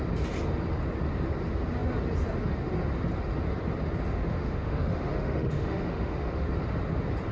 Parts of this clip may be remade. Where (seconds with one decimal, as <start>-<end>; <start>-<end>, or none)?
4.1-6.5